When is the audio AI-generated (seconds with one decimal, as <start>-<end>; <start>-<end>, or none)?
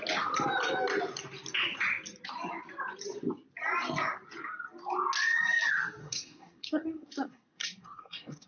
6.0-8.5